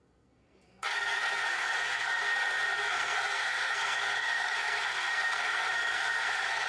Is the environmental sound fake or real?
fake